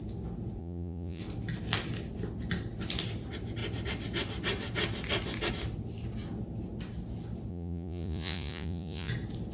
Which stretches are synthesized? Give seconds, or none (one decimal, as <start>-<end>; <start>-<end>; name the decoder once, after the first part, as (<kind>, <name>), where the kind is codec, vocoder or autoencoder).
0.6-1.2 (vocoder, Vocos); 7.5-9.1